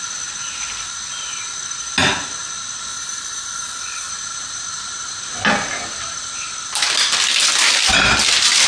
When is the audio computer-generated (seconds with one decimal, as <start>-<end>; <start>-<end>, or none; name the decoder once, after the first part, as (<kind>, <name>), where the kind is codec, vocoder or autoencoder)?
2.9-4.1 (vocoder, Vocos)